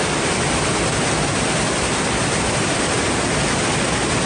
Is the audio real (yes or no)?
yes